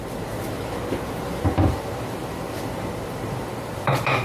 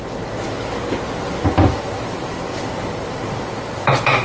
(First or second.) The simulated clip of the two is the first